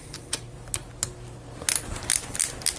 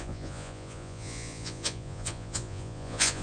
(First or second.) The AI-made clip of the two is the second